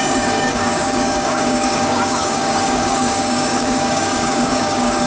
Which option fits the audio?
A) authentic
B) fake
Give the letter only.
B